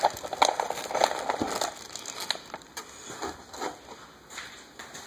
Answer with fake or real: real